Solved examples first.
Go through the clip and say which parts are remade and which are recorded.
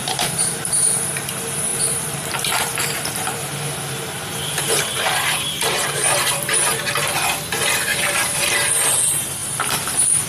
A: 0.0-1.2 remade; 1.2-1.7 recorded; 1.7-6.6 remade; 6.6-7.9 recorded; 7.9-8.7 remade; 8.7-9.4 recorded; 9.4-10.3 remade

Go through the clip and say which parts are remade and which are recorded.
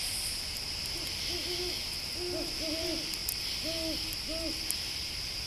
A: 0.0-5.5 recorded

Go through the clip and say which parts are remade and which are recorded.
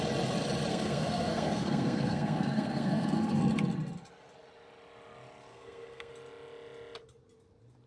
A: 0.0-0.7 recorded; 0.7-3.4 remade; 3.4-5.5 recorded; 5.5-6.1 remade; 6.1-7.9 recorded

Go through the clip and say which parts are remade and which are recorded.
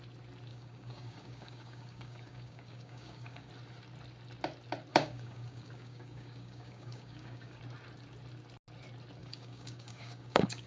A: 0.0-0.5 recorded; 0.5-3.5 remade; 3.5-4.9 recorded; 4.9-7.6 remade; 7.6-9.2 recorded; 9.2-10.7 remade